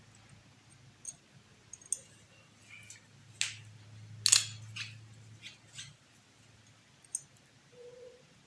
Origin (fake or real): real